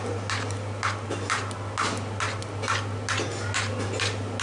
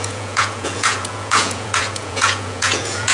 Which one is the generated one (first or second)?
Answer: second